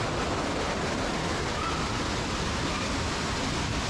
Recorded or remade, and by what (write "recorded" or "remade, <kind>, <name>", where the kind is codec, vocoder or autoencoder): recorded